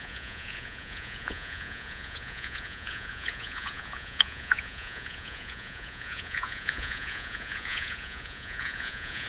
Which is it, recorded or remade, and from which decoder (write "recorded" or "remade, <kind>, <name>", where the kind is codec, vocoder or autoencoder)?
remade, vocoder, Vocos